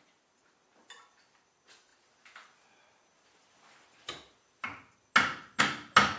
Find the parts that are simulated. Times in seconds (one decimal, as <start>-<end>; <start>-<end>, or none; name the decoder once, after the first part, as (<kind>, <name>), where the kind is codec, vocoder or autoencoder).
none